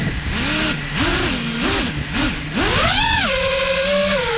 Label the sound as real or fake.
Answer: real